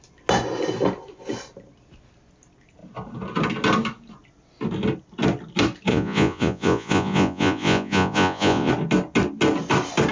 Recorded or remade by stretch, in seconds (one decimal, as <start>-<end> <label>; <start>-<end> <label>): 0.0-5.9 recorded; 5.9-8.7 remade; 8.7-10.1 recorded